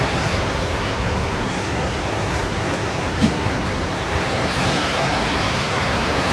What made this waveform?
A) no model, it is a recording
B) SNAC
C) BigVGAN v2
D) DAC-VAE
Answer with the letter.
B